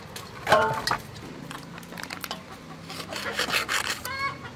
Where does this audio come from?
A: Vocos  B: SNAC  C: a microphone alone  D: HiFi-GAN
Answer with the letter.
C